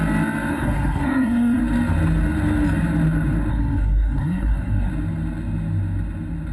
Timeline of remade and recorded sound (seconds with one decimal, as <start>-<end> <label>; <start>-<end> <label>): 0.0-0.5 recorded; 0.5-1.6 remade; 1.6-3.5 recorded; 3.5-4.9 remade; 4.9-6.5 recorded